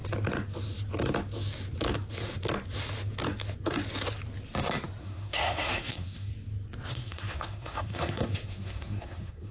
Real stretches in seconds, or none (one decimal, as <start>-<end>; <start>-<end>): 0.0-5.0; 6.3-6.9